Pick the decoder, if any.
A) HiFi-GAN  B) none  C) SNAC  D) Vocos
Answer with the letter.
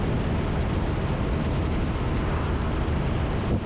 B